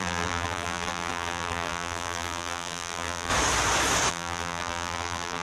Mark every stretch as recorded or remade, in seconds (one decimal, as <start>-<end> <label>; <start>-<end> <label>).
0.0-3.3 remade; 3.3-4.1 recorded; 4.1-5.4 remade